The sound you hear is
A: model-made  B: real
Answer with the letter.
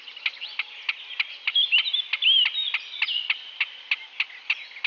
B